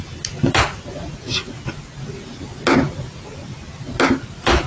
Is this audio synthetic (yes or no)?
no